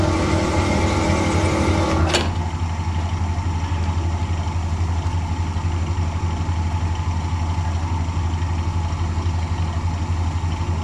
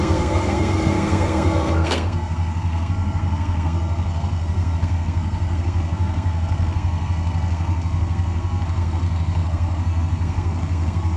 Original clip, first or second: first